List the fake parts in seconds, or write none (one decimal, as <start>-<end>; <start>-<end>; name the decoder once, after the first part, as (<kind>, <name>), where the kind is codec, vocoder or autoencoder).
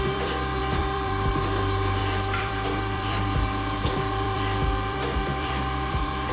0.0-6.3 (vocoder, BigVGAN v2)